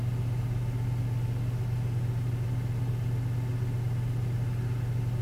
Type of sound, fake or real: real